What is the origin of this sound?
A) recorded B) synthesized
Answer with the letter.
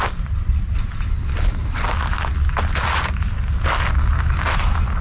A